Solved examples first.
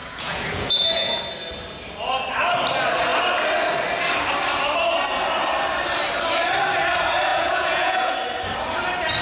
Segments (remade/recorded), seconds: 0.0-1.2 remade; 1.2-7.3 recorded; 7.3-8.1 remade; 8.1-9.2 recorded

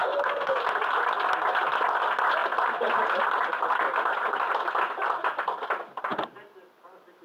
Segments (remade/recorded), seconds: 0.0-0.6 remade; 0.6-7.2 recorded

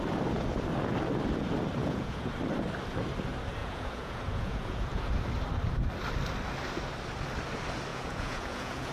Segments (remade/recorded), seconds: 0.0-1.8 recorded; 1.8-2.3 remade; 2.3-3.6 recorded; 3.6-5.0 remade; 5.0-7.9 recorded; 7.9-8.9 remade

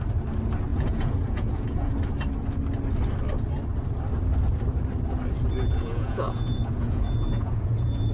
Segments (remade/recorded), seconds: 0.0-0.7 recorded; 0.7-1.9 remade; 1.9-5.8 recorded; 5.8-8.1 remade